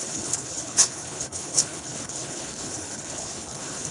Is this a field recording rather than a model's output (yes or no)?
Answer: no